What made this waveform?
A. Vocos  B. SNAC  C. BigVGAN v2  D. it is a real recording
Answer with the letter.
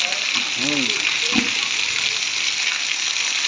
D